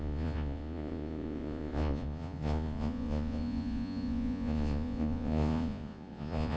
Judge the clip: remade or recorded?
remade